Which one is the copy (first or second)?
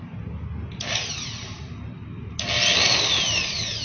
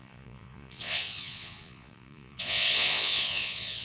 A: second